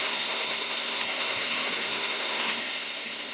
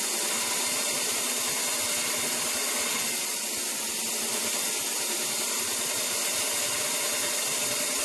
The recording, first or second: second